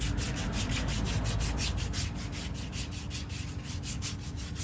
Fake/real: real